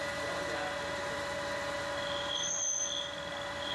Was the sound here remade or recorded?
recorded